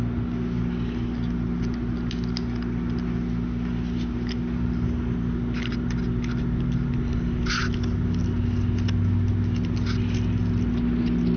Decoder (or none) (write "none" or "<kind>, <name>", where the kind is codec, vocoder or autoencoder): none